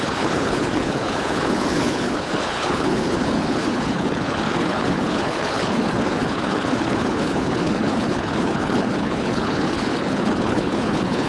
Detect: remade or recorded remade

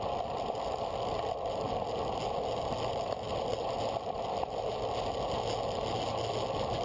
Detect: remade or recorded recorded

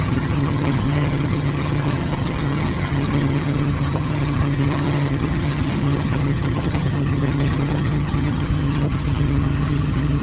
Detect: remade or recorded remade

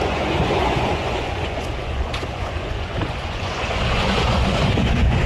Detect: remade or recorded remade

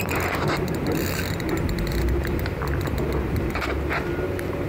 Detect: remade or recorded recorded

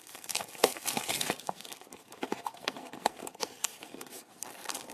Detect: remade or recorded remade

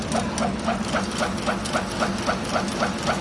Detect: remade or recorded recorded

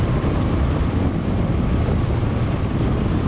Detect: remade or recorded remade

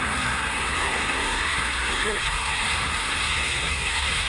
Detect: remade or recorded remade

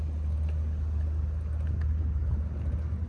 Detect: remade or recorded recorded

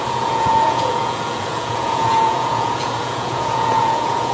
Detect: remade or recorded remade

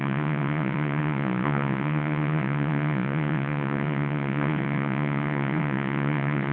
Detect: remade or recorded remade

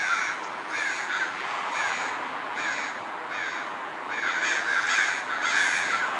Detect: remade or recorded remade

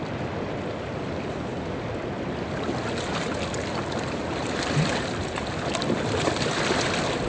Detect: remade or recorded recorded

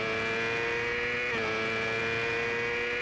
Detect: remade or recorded recorded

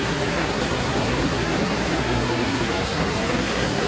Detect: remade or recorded remade